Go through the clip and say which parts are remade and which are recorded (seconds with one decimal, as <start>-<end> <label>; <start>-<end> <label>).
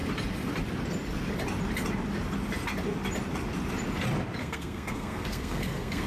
0.0-4.4 recorded; 4.4-6.1 remade